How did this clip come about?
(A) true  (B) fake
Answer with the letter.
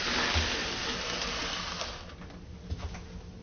A